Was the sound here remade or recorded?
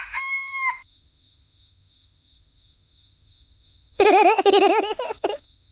remade